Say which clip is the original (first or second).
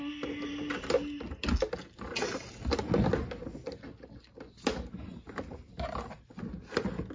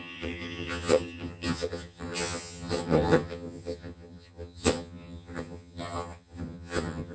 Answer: first